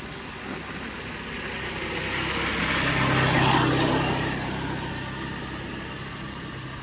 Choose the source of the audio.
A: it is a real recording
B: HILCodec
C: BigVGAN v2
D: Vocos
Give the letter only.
A